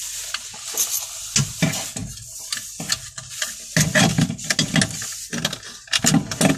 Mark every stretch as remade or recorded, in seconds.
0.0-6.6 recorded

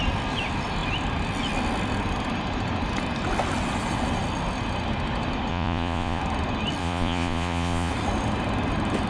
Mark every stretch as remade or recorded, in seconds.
0.0-5.5 recorded; 5.5-6.2 remade; 6.2-6.8 recorded; 6.8-7.9 remade; 7.9-9.1 recorded

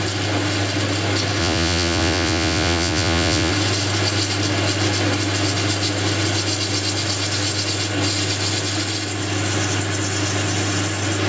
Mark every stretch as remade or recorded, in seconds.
0.0-1.4 recorded; 1.4-3.5 remade; 3.5-11.3 recorded

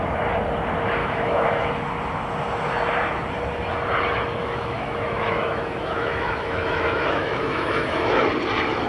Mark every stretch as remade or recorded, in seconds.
0.0-1.0 recorded; 1.0-1.7 remade; 1.7-4.4 recorded; 4.4-8.2 remade; 8.2-8.9 recorded

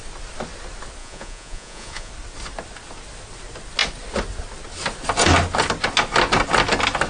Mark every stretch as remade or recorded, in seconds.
0.0-1.0 recorded; 1.0-2.1 remade; 2.1-7.1 recorded

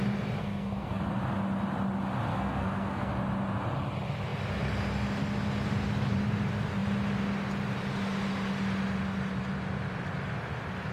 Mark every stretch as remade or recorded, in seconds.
0.0-0.4 recorded; 0.4-1.0 remade; 1.0-2.3 recorded; 2.3-3.1 remade; 3.1-10.9 recorded

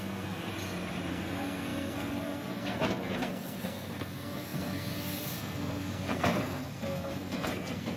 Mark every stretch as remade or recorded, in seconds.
0.0-0.5 remade; 0.5-1.1 recorded; 1.1-8.0 remade